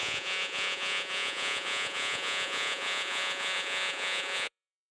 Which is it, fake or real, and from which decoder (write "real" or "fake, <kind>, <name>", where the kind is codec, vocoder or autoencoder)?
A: fake, vocoder, Vocos